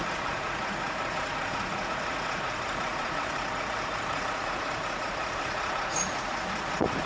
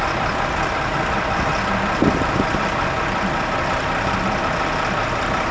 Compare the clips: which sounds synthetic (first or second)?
first